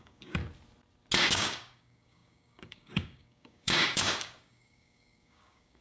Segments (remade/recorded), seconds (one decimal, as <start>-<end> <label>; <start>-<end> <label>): 0.0-0.4 remade; 0.4-1.2 recorded; 1.2-5.8 remade